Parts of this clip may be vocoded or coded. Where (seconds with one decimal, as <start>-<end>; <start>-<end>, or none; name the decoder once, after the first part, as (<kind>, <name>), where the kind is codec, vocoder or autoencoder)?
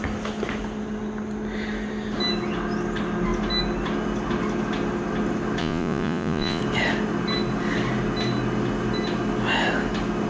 5.6-6.6 (vocoder, Vocos)